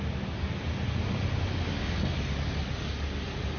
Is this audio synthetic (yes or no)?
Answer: no